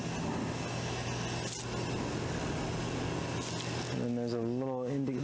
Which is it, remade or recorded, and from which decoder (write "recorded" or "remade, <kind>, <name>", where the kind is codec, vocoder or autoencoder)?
recorded